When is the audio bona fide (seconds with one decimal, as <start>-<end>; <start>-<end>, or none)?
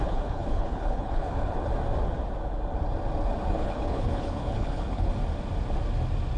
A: 1.7-3.5; 5.1-6.4